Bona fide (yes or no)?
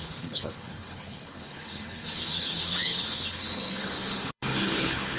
no